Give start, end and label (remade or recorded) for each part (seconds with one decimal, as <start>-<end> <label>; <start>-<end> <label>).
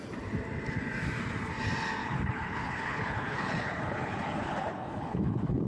0.0-2.0 recorded; 2.0-5.7 remade